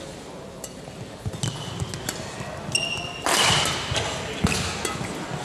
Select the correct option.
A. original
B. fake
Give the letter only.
A